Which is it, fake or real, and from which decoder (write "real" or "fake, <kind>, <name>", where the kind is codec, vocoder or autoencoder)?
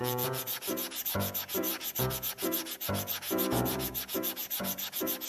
fake, vocoder, Vocos